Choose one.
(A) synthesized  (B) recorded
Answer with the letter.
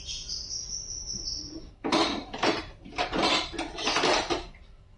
A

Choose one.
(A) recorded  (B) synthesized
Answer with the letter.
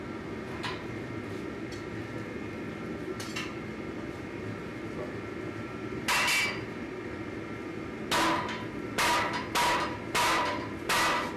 A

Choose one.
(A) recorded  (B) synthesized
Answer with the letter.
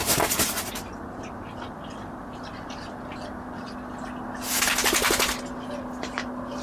A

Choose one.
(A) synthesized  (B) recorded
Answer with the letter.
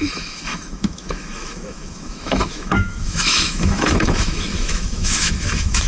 A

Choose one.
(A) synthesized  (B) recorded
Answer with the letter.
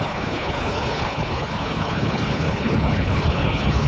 A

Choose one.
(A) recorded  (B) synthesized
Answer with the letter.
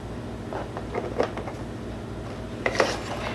A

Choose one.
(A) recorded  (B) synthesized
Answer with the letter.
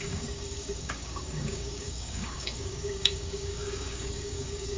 B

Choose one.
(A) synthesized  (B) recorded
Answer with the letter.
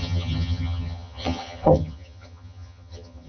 A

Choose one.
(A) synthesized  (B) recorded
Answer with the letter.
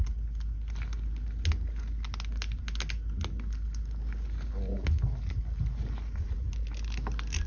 B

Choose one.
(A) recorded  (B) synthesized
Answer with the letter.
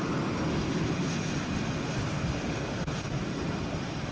A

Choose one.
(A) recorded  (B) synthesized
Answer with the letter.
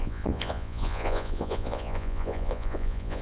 B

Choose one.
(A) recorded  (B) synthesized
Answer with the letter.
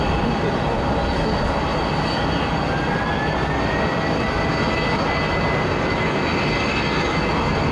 A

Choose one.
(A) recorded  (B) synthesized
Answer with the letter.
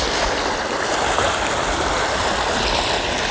A